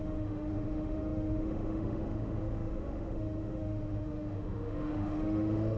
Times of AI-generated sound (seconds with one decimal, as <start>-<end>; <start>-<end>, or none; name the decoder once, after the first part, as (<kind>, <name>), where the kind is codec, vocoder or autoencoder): 0.0-5.8 (autoencoder, DAC-VAE)